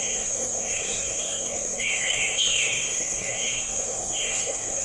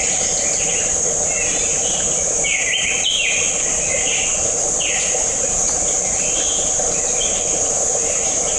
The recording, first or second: second